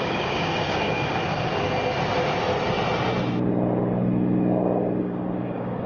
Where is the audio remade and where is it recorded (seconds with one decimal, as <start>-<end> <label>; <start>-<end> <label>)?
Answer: 0.0-1.5 remade; 1.5-5.0 recorded; 5.0-5.9 remade